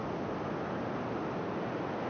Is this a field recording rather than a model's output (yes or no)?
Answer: yes